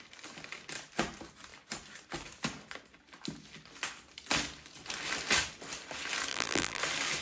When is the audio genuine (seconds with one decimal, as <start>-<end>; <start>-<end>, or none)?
0.0-6.3; 6.8-7.2